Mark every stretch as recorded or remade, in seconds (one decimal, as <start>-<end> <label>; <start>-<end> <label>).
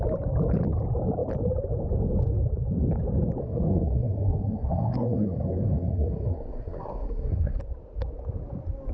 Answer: 0.0-3.4 recorded; 3.4-7.6 remade; 7.6-8.9 recorded